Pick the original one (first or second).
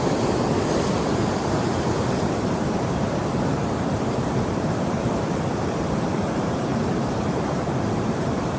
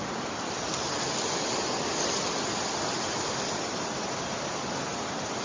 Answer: second